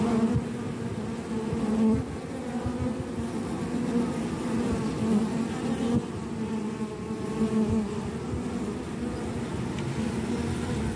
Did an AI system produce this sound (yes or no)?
no